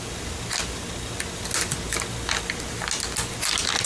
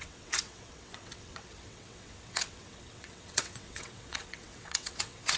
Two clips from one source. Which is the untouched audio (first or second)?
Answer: first